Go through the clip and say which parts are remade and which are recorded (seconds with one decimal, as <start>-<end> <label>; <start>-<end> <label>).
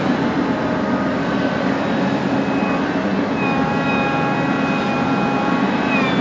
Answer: 0.0-6.2 recorded